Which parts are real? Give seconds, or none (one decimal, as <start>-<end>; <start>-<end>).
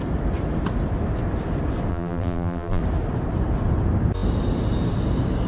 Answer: 0.0-1.9; 2.8-5.5